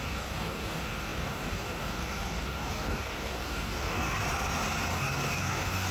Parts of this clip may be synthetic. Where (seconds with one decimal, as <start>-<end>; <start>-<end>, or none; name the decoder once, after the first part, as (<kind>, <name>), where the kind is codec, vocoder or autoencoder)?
0.0-4.2 (codec, DAC); 4.9-5.9

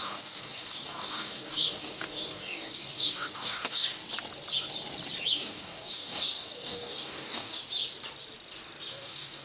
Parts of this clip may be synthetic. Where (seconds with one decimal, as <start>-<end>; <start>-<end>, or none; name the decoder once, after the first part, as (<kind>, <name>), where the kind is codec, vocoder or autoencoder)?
0.0-4.0 (codec, DAC); 5.3-7.6; 8.9-9.4

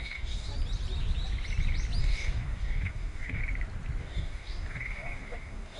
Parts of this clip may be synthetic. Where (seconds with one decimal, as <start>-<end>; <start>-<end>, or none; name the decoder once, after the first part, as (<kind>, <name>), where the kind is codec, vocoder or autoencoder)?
0.0-0.5 (codec, DAC); 2.0-3.4; 4.0-5.8

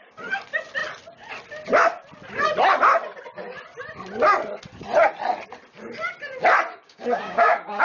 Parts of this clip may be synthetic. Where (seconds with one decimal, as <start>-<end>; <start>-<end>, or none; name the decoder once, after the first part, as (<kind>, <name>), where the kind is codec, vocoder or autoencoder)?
6.7-7.8 (codec, DAC)

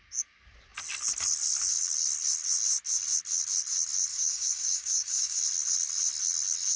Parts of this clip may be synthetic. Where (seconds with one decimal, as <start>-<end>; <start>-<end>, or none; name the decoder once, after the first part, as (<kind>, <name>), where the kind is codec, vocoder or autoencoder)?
4.1-5.4 (codec, DAC)

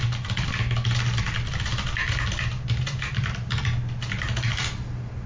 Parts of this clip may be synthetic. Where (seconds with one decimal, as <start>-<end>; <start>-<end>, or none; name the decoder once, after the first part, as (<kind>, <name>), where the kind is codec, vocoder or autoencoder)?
none